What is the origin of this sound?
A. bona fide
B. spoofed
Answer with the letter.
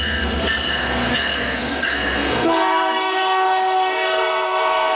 B